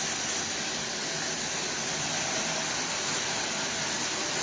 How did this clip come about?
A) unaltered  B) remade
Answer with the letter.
A